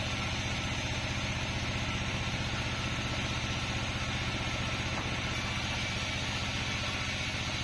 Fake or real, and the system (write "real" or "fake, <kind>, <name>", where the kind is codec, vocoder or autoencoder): real